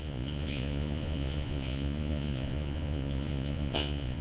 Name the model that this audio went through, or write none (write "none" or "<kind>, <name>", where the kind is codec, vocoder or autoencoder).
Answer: vocoder, Vocos